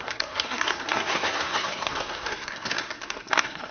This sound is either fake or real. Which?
fake